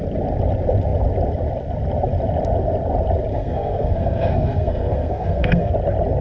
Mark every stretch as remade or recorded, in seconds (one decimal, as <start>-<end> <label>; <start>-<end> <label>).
0.0-3.3 recorded; 3.3-5.7 remade; 5.7-6.2 recorded